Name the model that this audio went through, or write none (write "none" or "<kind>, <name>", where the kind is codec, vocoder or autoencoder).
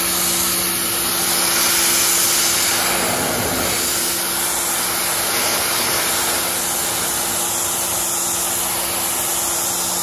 none